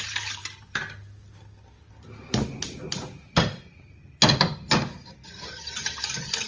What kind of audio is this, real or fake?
real